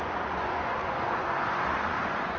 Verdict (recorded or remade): remade